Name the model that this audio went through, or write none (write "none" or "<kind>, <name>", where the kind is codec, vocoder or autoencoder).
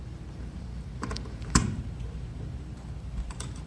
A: vocoder, BigVGAN v2